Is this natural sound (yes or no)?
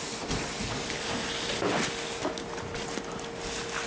yes